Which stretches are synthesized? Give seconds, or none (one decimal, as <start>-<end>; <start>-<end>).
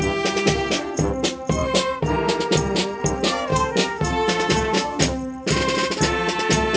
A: 3.5-5.0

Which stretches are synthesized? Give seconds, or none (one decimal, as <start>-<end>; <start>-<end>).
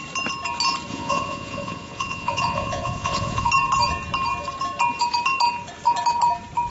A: 0.9-3.5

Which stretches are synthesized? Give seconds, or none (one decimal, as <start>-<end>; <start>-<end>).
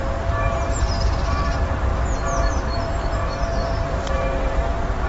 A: 0.0-5.1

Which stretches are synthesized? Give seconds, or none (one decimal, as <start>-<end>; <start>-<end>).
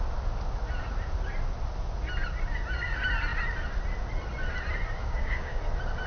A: 5.0-5.6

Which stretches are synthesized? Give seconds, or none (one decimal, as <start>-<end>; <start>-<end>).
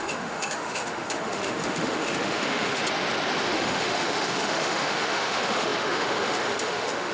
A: 0.0-2.8; 3.4-7.1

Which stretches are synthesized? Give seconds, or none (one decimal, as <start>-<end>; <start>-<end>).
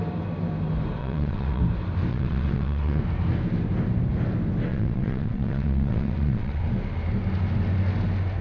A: 1.0-1.6; 2.1-3.0; 4.7-6.6